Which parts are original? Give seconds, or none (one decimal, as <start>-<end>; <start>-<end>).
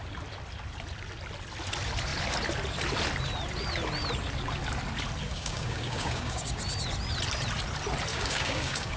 0.0-5.3; 6.6-8.1